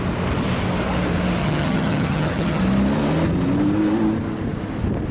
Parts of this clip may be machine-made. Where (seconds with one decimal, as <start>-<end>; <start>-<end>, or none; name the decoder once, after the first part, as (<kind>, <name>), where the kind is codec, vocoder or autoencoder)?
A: 1.4-2.6 (vocoder, HiFi-GAN)